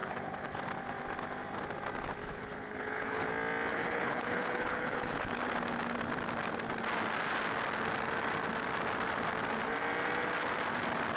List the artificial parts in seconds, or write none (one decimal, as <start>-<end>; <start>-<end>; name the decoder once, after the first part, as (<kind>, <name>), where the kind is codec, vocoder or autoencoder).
0.0-0.6 (codec, HILCodec); 2.2-3.3; 3.7-5.4